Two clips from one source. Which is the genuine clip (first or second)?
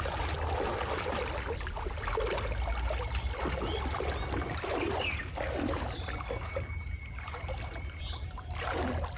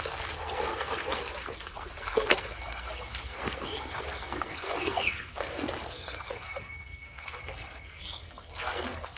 first